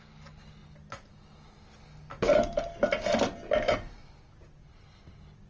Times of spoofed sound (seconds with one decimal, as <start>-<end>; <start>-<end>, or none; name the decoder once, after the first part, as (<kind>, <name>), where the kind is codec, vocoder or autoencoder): none